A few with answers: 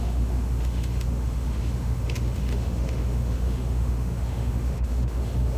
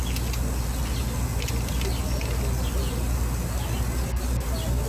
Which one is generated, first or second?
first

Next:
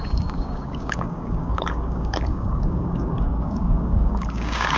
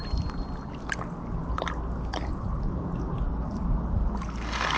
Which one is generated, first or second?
first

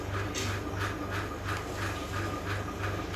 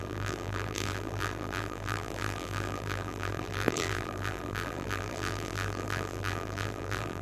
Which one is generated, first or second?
second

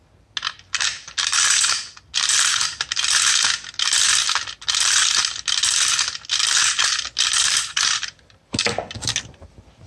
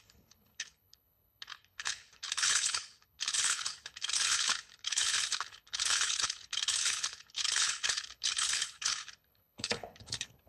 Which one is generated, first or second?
second